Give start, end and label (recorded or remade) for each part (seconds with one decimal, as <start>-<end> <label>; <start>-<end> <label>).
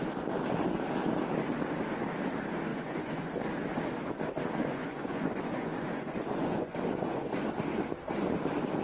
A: 0.0-2.7 recorded; 2.7-3.3 remade; 3.3-4.6 recorded; 4.6-7.6 remade; 7.6-8.8 recorded